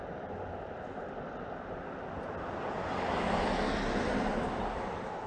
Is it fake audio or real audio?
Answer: real